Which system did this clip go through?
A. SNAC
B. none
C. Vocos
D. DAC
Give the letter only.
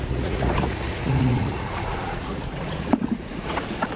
C